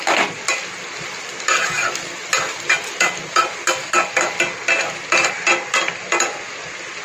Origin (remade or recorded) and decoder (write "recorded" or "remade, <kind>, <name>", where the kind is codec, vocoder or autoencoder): recorded